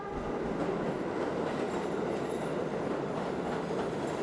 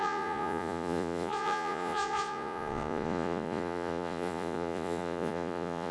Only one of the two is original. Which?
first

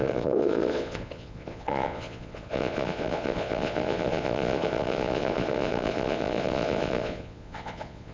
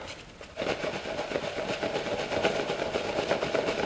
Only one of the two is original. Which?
second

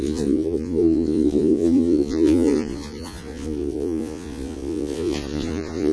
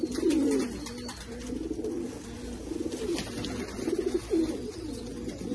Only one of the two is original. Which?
second